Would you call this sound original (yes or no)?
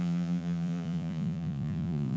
no